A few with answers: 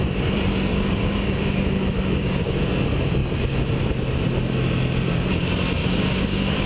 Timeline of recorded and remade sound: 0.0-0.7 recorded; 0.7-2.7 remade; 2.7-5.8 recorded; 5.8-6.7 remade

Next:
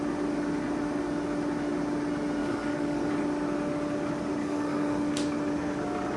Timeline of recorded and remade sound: 0.0-2.4 recorded; 2.4-3.1 remade; 3.1-4.4 recorded; 4.4-5.1 remade; 5.1-6.2 recorded